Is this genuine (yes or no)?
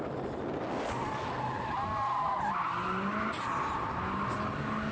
yes